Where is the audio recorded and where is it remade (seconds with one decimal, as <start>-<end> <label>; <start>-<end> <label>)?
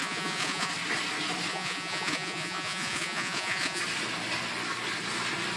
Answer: 0.0-0.7 remade; 0.7-1.5 recorded; 1.5-3.8 remade; 3.8-5.6 recorded